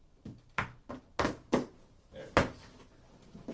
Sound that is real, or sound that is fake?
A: real